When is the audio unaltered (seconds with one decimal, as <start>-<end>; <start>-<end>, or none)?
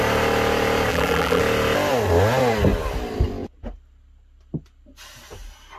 0.0-0.9; 1.4-5.8